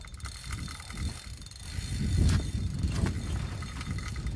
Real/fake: real